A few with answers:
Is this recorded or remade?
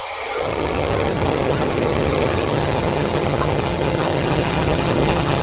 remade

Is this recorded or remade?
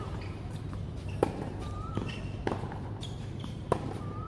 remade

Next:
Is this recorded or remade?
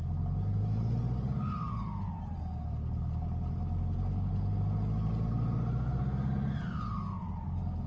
recorded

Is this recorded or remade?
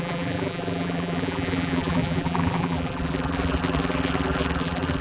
remade